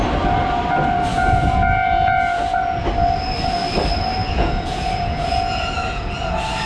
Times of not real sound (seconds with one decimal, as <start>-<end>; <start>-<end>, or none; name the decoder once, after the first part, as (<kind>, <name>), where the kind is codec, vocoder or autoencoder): 1.1-2.8 (vocoder, Vocos); 4.2-6.1